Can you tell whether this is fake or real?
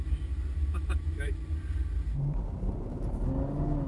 real